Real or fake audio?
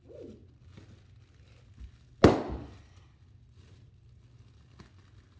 real